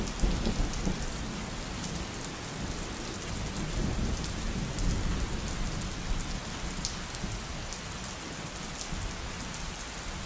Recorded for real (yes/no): yes